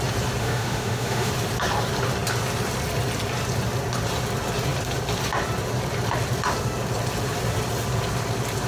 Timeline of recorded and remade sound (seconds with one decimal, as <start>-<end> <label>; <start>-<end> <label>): 0.0-0.4 recorded; 0.4-1.3 remade; 1.3-8.7 recorded